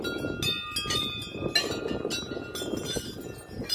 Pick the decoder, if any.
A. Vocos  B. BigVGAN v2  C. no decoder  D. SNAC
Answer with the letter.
C